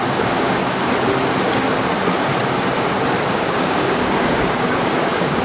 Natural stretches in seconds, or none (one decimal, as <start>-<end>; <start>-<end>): 0.6-3.3

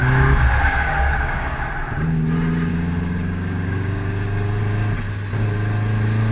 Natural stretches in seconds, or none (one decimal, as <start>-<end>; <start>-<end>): 1.5-2.7; 4.6-6.3

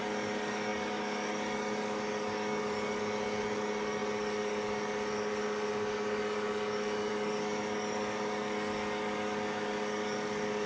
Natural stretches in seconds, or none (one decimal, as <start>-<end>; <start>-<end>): none

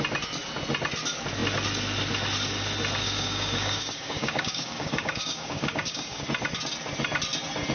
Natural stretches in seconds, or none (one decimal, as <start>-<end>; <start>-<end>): 0.0-3.0; 6.2-7.7

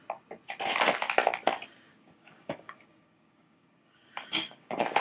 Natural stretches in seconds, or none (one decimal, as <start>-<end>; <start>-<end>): 0.0-1.9